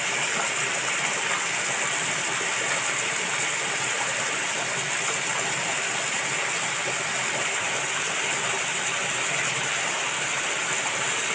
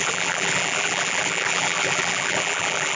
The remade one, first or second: second